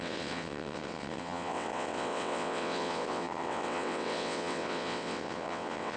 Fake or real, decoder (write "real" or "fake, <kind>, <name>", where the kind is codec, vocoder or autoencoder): fake, vocoder, WaveNeXt